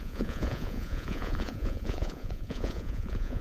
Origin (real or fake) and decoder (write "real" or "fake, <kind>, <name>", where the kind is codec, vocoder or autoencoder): fake, vocoder, Vocos